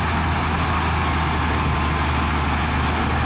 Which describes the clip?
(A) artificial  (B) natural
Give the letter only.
B